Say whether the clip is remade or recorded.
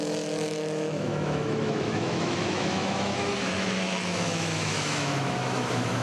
remade